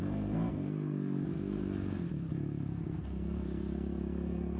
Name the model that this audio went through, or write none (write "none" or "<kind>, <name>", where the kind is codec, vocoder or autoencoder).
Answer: codec, SNAC